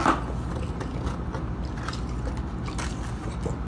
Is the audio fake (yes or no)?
no